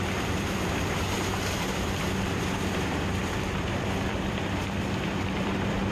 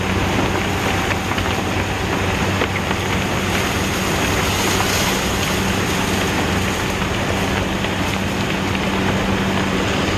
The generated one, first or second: first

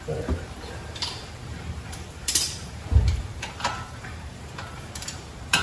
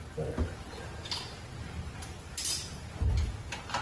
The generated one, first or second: first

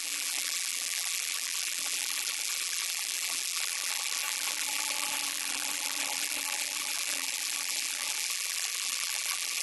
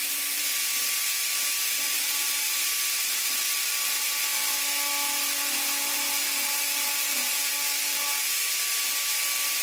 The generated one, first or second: first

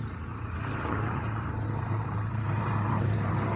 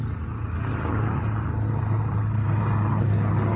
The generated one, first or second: first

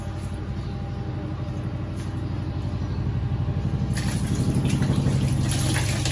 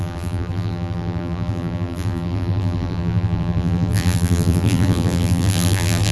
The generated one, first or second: second